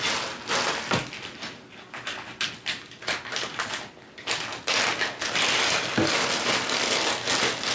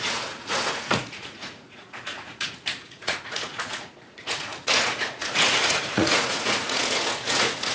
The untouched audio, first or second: first